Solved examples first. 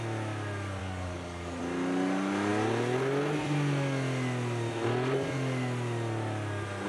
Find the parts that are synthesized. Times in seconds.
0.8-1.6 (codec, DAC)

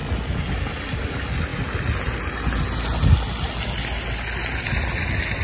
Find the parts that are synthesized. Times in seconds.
none

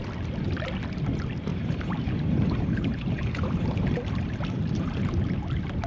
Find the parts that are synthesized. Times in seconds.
1.5-5.0 (vocoder, BigVGAN v2)